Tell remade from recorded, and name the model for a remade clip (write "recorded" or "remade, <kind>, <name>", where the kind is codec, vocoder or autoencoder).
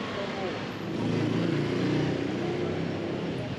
recorded